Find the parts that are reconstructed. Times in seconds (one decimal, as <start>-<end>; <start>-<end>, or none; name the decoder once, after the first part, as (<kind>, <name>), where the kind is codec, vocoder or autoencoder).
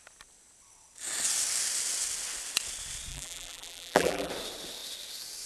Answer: 3.1-4.3 (vocoder, BigVGAN v2)